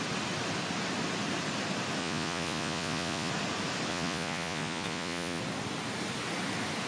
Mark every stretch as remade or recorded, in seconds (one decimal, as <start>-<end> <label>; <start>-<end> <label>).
0.0-2.0 recorded; 2.0-3.3 remade; 3.3-3.9 recorded; 3.9-5.4 remade; 5.4-6.9 recorded